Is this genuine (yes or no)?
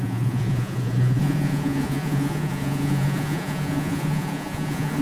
no